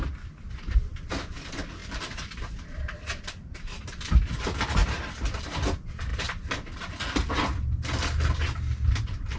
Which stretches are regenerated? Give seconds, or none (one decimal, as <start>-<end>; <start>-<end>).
1.8-2.8; 4.8-5.4; 6.1-7.3